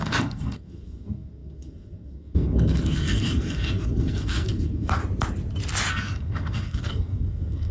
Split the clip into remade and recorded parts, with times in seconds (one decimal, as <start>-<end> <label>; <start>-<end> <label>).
0.0-5.0 remade; 5.0-5.9 recorded; 5.9-7.7 remade